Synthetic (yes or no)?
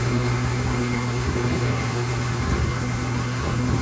yes